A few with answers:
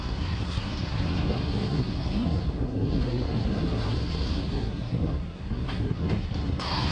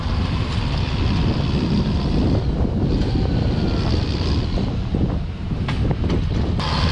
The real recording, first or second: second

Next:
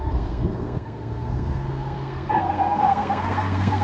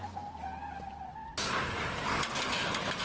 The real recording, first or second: second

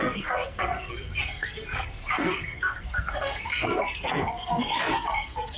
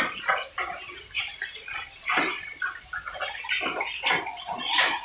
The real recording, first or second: second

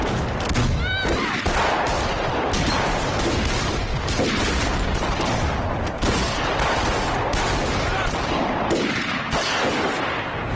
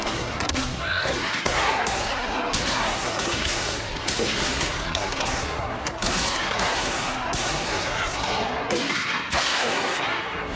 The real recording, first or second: first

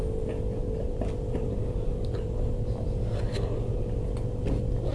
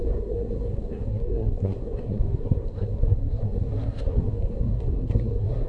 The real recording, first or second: first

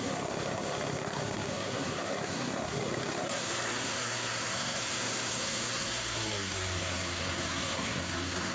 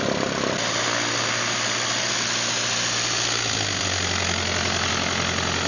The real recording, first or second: second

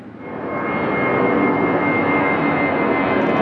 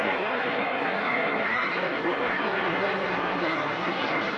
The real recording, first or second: first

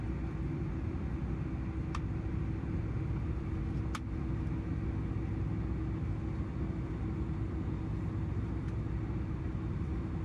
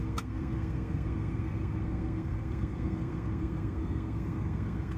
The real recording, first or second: first